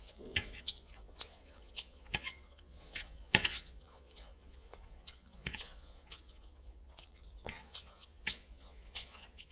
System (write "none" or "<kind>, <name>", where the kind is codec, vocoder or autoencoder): vocoder, Vocos